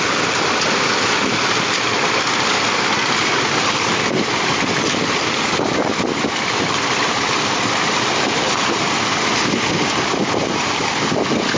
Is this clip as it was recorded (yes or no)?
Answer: yes